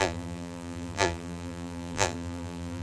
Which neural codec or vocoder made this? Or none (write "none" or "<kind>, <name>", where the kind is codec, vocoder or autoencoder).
vocoder, BigVGAN v2